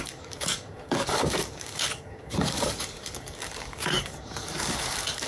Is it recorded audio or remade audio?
remade